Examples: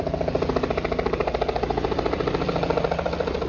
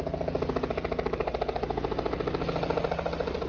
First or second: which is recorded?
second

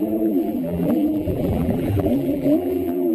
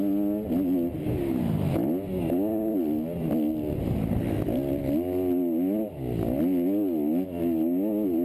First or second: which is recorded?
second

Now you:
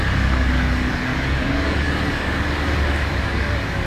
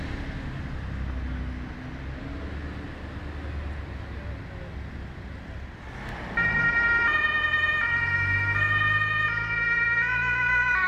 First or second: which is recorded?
second